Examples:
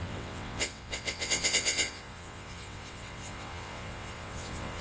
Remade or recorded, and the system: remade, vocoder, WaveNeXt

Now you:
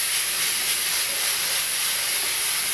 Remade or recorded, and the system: recorded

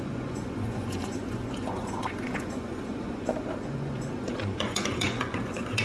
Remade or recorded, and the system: remade, vocoder, Vocos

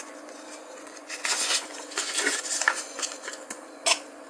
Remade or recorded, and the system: remade, vocoder, Vocos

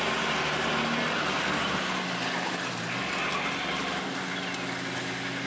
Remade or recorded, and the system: recorded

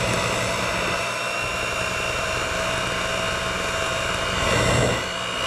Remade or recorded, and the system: recorded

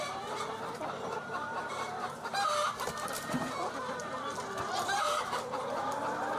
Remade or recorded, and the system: remade, vocoder, BigVGAN v2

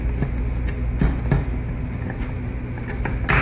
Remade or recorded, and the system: recorded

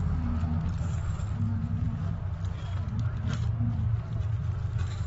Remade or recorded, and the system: recorded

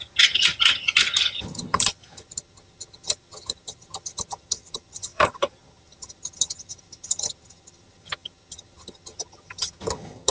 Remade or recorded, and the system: remade, vocoder, HiFi-GAN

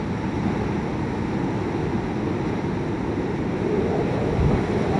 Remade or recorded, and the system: recorded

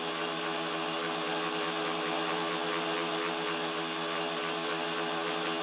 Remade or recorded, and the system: recorded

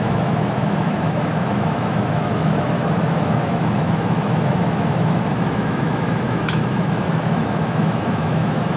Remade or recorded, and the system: remade, autoencoder, DAC-VAE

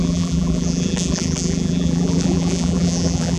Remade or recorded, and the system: remade, vocoder, BigVGAN v2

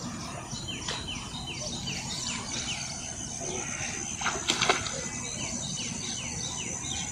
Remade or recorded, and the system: recorded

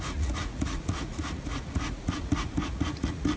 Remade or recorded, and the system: remade, vocoder, Vocos